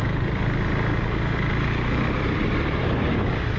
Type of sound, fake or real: real